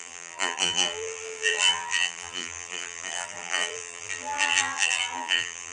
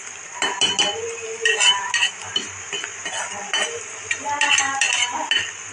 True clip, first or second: second